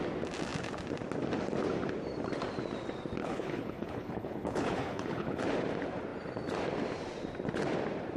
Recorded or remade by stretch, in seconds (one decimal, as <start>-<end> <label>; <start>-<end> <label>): 0.0-3.2 recorded; 3.2-5.4 remade; 5.4-8.2 recorded